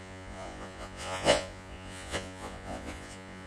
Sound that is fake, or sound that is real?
fake